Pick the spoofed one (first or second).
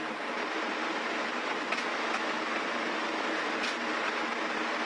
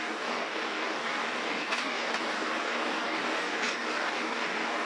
second